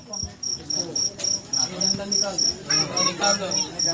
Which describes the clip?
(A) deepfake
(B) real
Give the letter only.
B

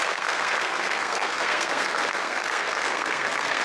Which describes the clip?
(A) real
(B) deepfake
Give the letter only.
B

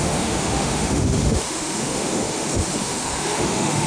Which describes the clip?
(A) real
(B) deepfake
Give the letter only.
B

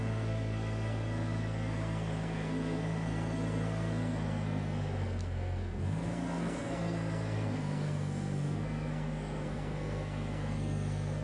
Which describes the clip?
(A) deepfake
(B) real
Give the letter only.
A